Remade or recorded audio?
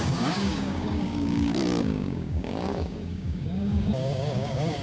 remade